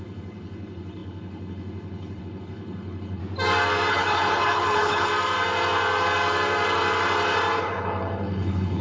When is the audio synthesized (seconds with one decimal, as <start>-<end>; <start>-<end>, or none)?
0.0-3.2; 3.9-5.1; 7.6-8.8